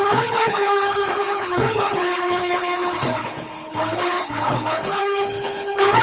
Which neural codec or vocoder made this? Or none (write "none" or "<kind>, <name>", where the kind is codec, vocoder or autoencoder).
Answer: codec, HILCodec